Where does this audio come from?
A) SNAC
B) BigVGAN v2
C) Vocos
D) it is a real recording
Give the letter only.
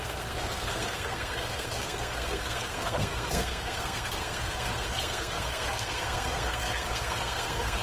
A